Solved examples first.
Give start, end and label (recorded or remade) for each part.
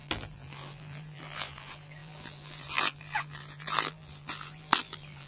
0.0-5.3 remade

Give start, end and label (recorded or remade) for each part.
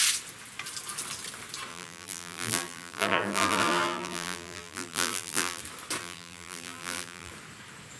0.0-1.7 recorded; 1.7-5.6 remade; 5.6-6.0 recorded; 6.0-7.3 remade; 7.3-8.0 recorded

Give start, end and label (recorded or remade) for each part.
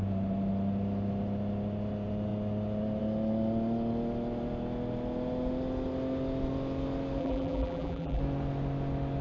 0.0-7.2 recorded; 7.2-8.2 remade; 8.2-9.2 recorded